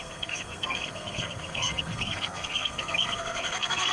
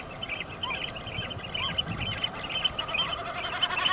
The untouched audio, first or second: second